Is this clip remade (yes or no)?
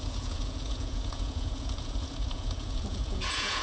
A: yes